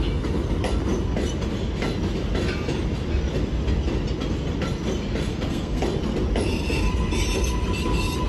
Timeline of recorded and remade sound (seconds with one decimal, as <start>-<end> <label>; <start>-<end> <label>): 0.0-5.3 recorded; 5.3-5.8 remade; 5.8-8.3 recorded